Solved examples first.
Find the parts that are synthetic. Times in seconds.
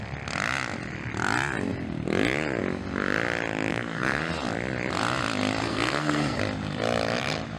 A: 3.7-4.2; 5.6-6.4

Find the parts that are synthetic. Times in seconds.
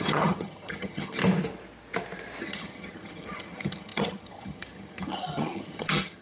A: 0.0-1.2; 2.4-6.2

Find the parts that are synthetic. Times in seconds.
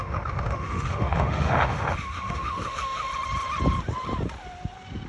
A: 0.0-3.1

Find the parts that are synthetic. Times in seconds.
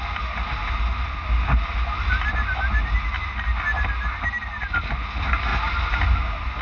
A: none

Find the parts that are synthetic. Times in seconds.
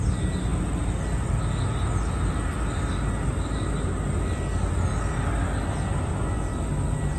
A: none